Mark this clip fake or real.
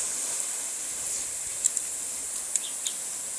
real